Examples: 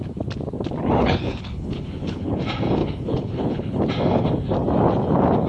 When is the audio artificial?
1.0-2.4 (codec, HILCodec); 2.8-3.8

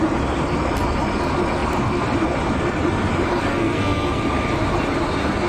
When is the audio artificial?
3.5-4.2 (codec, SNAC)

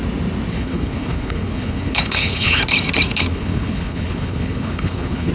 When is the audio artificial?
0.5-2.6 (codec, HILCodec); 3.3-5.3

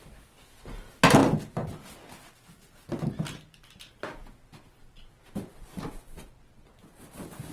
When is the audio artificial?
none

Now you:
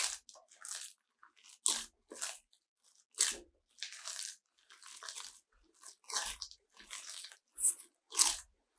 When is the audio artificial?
none

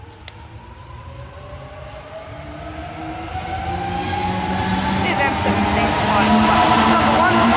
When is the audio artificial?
none

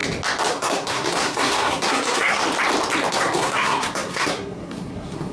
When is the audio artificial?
0.5-2.4 (codec, SNAC); 3.1-5.3

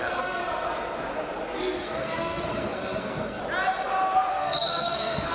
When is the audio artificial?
0.0-0.4 (codec, SNAC); 1.6-3.4; 4.3-5.3